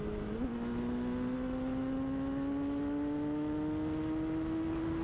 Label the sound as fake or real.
real